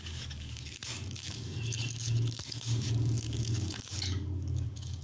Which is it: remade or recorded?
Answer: remade